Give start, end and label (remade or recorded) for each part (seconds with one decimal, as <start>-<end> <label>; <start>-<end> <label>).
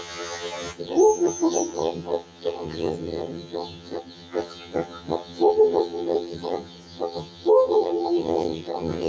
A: 0.0-9.1 remade